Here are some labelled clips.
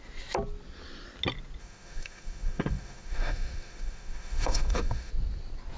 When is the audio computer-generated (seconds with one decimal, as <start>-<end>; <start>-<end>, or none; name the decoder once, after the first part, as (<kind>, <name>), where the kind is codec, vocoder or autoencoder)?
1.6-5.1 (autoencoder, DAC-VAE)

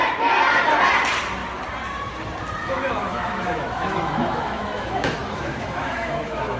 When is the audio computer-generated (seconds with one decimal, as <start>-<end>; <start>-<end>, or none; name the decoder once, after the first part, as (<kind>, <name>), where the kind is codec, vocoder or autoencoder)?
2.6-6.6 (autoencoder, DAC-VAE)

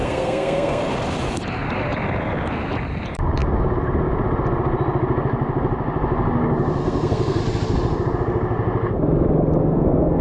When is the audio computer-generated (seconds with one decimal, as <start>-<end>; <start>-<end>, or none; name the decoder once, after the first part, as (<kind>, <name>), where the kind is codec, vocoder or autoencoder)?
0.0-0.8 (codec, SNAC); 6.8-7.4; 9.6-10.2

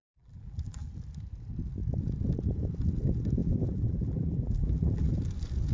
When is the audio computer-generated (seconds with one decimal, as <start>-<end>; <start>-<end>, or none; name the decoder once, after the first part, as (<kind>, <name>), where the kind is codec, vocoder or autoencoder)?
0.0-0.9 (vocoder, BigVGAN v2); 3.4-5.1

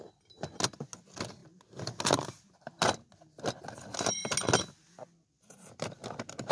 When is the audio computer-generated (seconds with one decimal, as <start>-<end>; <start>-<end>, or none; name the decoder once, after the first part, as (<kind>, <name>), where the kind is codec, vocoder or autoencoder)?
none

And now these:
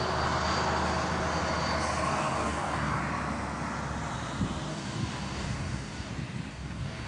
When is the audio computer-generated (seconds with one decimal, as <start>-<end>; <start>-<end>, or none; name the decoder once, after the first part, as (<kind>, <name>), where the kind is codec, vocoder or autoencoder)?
2.1-3.0 (codec, DAC); 4.7-6.1; 6.5-7.1